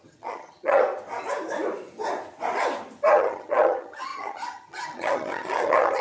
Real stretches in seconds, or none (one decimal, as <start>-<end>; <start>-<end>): 0.8-3.1